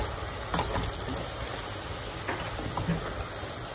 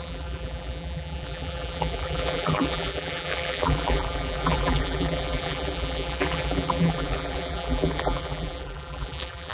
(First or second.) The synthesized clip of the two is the second